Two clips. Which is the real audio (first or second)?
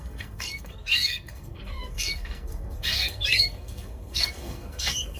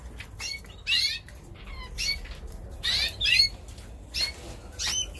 second